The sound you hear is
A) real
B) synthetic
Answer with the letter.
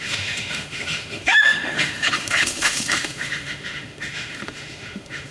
B